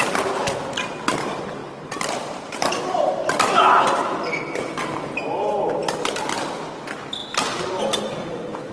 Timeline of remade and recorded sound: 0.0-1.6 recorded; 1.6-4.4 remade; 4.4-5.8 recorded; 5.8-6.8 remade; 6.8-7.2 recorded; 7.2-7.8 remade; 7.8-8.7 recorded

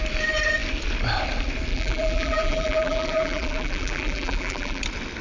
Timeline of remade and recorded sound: 0.0-1.7 recorded; 1.7-4.8 remade; 4.8-5.2 recorded

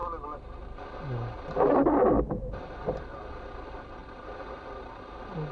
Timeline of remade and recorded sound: 0.0-4.0 recorded; 4.0-5.1 remade; 5.1-5.5 recorded

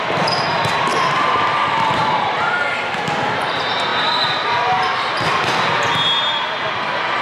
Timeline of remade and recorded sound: 0.0-0.9 recorded; 0.9-2.6 remade; 2.6-7.2 recorded

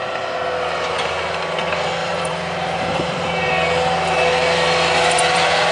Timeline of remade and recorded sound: 0.0-2.0 recorded; 2.0-3.5 remade; 3.5-5.7 recorded

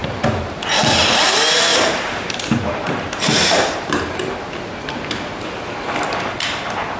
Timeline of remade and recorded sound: 0.0-0.5 remade; 0.5-1.7 recorded; 1.7-4.0 remade; 4.0-7.0 recorded

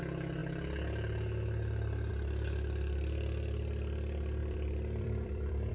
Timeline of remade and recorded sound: 0.0-4.4 recorded; 4.4-5.7 remade

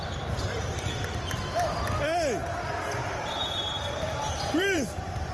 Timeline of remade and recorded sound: 0.0-3.0 recorded; 3.0-5.3 remade